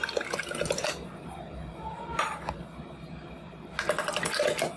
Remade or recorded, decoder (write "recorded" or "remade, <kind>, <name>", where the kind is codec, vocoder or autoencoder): recorded